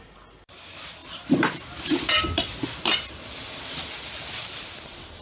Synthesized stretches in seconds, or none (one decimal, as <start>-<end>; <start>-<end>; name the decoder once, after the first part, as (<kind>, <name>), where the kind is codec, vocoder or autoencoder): none